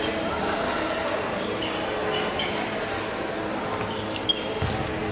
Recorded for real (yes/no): yes